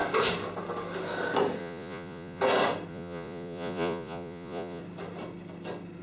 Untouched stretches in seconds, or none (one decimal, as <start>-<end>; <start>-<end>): 0.0-1.6; 2.4-2.9; 4.8-6.0